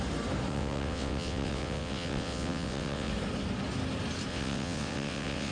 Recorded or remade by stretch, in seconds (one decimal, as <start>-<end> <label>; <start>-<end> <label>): 0.0-0.5 recorded; 0.5-3.1 remade; 3.1-4.3 recorded; 4.3-5.5 remade